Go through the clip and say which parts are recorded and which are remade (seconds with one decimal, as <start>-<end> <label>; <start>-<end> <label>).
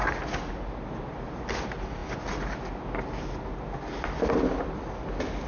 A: 0.0-5.5 recorded